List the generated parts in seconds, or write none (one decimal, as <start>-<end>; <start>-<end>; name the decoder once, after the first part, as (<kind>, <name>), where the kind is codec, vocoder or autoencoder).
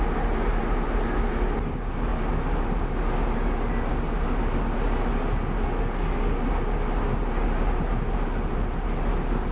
none